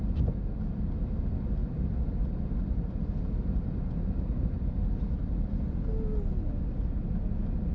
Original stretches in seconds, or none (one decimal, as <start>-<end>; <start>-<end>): 0.0-7.7